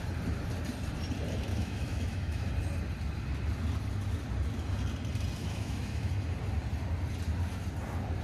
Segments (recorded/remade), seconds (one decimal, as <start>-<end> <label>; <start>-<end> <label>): 0.0-1.5 recorded; 1.5-2.5 remade; 2.5-5.4 recorded; 5.4-6.1 remade; 6.1-8.2 recorded